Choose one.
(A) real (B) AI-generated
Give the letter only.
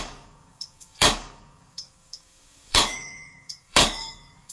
B